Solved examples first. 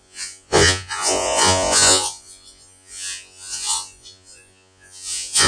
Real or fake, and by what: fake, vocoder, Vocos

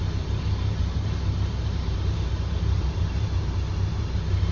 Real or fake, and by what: fake, vocoder, BigVGAN v2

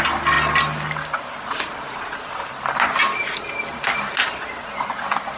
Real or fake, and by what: real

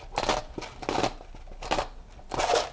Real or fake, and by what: real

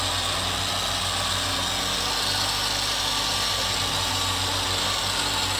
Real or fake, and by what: real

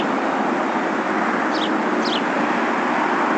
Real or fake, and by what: real